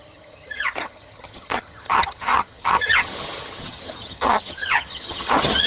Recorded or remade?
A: remade